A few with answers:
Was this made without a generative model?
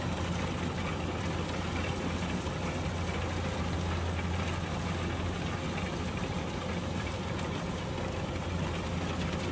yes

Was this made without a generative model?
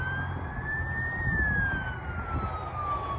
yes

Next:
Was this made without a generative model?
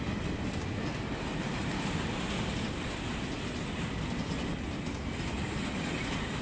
yes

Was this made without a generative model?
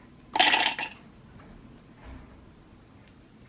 yes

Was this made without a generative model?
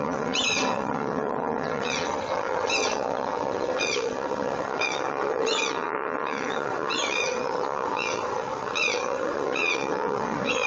no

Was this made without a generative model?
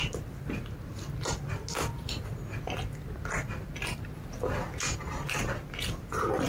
yes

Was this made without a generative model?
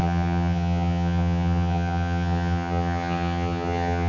no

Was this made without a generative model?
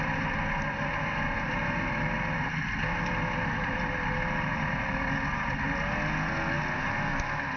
yes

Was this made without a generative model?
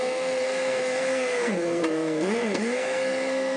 no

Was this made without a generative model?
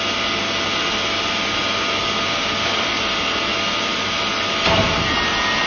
yes